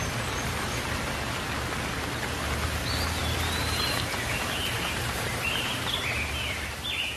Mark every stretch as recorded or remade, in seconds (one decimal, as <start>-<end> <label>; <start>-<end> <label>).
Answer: 0.0-3.2 recorded; 3.2-7.2 remade